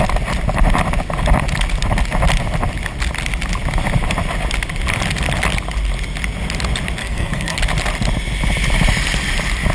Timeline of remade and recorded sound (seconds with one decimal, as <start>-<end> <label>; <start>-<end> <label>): 0.0-7.0 recorded; 7.0-7.6 remade; 7.6-9.7 recorded